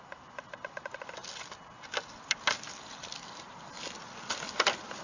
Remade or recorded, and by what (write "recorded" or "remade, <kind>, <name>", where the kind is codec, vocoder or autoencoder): recorded